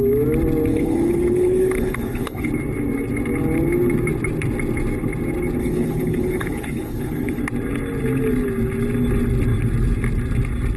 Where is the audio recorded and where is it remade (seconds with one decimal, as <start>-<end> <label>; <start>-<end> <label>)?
0.0-0.7 recorded; 0.7-2.5 remade; 2.5-5.6 recorded; 5.6-7.4 remade; 7.4-10.8 recorded